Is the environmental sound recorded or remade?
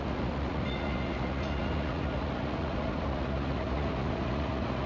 remade